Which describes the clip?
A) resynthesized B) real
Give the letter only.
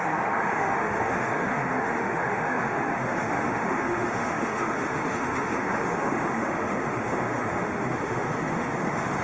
A